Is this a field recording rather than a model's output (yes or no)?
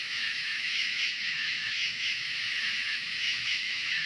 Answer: no